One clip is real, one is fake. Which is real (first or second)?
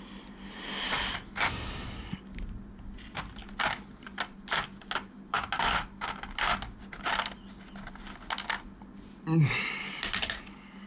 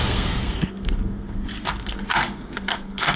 first